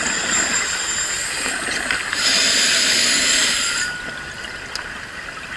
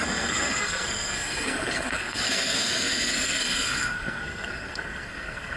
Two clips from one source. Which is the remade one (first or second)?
second